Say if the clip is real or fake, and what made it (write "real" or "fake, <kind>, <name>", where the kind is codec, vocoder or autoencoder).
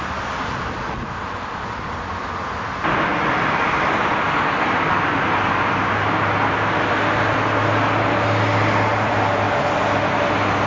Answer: real